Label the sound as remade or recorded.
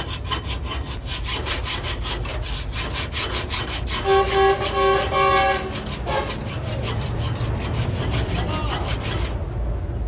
recorded